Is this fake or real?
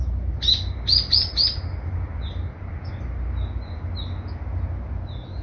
real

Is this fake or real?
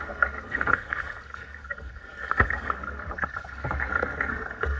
fake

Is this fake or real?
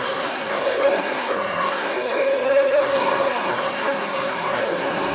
fake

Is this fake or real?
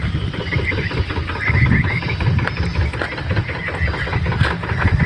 real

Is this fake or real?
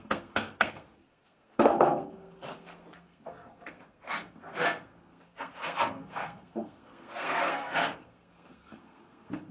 fake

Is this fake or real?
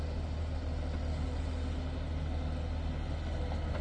real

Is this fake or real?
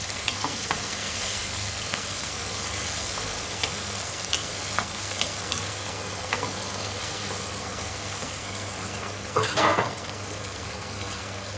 fake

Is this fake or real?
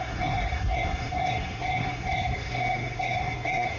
fake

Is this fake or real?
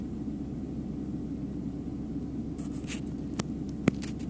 real